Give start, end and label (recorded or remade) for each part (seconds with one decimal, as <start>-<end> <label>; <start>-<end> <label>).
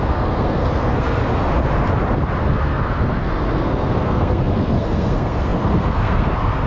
0.0-1.2 remade; 1.2-2.4 recorded; 2.4-6.7 remade